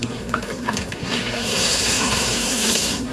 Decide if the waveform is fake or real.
fake